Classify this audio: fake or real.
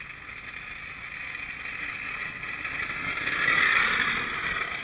real